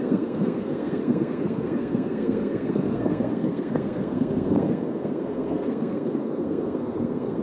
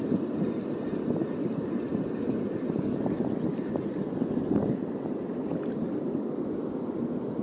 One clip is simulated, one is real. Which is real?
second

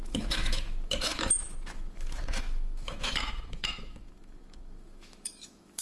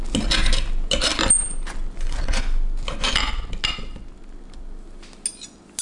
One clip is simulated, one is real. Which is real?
second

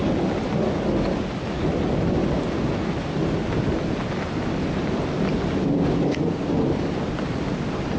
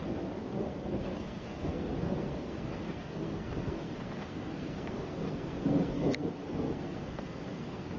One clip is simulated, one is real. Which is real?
first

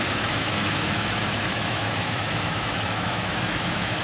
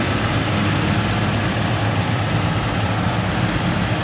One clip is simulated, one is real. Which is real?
second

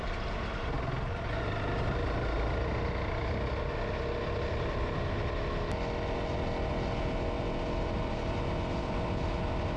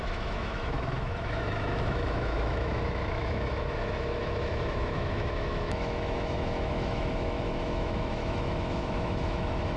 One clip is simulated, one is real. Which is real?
first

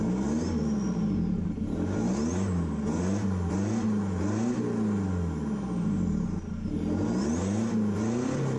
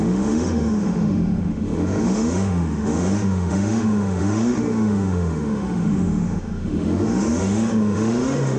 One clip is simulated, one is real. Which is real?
first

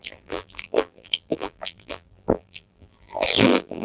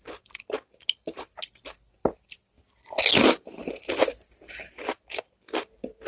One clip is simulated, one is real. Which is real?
second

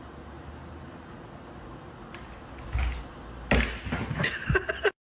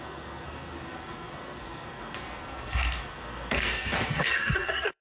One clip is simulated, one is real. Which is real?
first